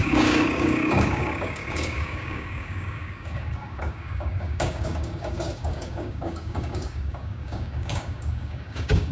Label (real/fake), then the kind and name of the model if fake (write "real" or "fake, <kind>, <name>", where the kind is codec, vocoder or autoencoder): fake, codec, DAC